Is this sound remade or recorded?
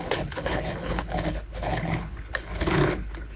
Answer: remade